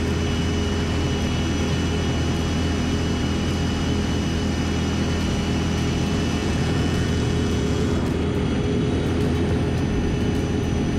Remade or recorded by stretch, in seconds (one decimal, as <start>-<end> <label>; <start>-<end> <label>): 0.0-6.4 recorded; 6.4-7.9 remade; 7.9-11.0 recorded